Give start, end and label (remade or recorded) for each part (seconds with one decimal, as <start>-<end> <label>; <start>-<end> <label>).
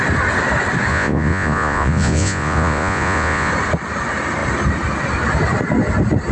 0.0-0.9 recorded; 0.9-3.5 remade; 3.5-6.3 recorded